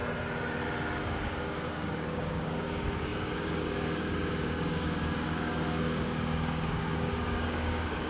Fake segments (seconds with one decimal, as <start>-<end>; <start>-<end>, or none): 1.0-8.1